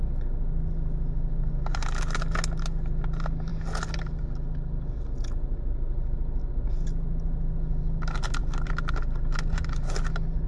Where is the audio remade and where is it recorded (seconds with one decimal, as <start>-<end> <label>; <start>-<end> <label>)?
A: 0.0-8.4 recorded; 8.4-9.0 remade; 9.0-10.5 recorded